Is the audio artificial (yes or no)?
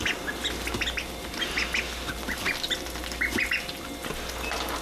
no